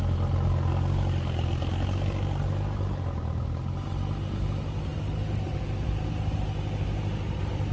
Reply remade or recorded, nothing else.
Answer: recorded